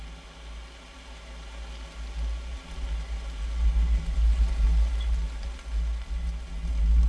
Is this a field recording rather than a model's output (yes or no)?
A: yes